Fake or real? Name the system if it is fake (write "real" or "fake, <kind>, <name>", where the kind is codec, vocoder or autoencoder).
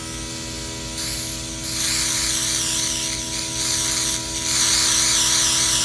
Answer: real